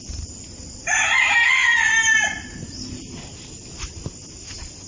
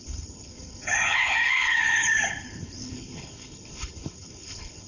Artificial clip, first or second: second